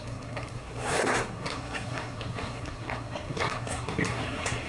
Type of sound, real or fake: fake